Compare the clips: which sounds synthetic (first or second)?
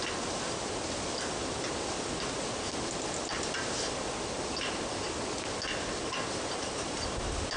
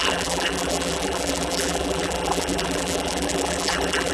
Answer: second